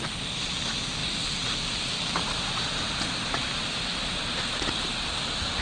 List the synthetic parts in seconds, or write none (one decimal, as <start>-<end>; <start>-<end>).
none